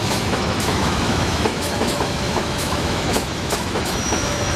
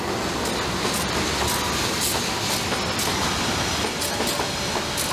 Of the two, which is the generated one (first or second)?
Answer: first